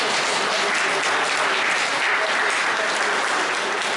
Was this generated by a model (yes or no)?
no